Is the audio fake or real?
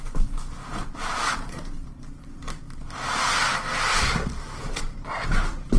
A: real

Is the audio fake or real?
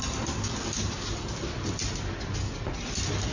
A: real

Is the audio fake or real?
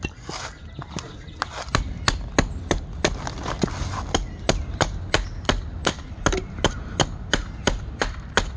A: real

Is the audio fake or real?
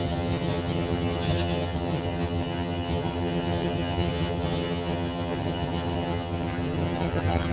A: fake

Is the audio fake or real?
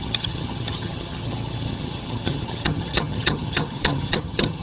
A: fake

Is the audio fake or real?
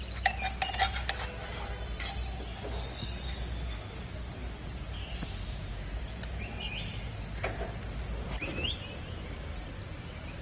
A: real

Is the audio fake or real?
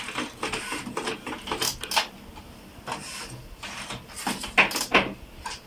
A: real